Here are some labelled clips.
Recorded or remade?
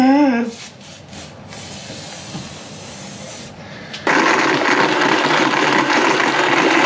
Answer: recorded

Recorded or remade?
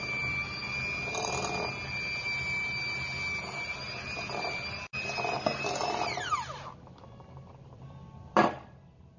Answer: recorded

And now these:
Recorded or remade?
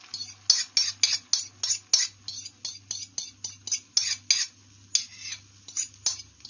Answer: recorded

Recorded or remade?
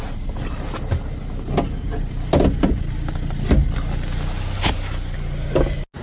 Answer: recorded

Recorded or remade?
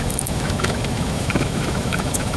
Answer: remade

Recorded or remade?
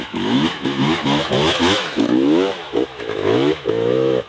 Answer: remade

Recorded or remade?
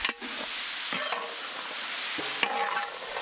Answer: recorded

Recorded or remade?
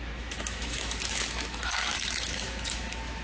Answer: remade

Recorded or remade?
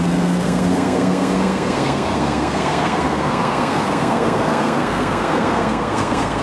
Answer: remade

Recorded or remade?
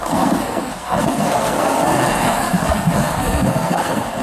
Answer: remade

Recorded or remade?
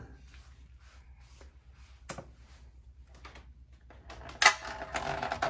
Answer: recorded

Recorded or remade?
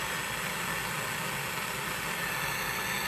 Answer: recorded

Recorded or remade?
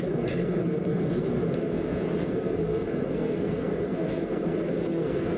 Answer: remade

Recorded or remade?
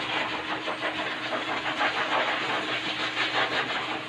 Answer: recorded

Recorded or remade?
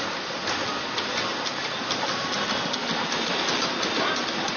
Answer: recorded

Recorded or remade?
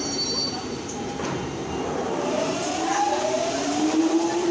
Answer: remade